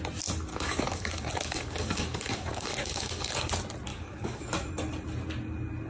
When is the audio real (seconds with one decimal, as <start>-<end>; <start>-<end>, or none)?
0.0-0.5; 3.5-3.9; 4.7-5.9